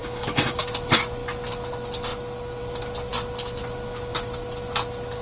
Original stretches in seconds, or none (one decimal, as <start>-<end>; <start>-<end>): 0.7-5.2